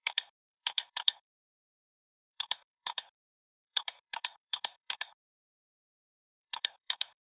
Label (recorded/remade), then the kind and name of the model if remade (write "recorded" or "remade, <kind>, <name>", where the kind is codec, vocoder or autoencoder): remade, codec, SNAC